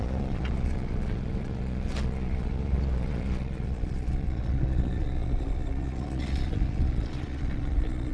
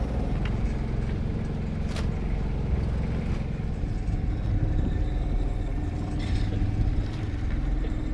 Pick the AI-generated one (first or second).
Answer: first